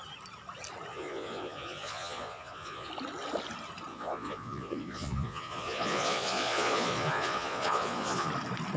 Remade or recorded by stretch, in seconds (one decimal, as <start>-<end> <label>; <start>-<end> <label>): 0.0-0.9 recorded; 0.9-2.9 remade; 2.9-3.9 recorded; 3.9-8.3 remade; 8.3-8.8 recorded